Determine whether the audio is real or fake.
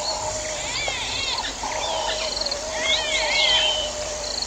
fake